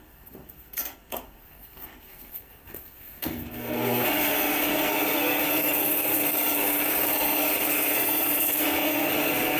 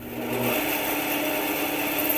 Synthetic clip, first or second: first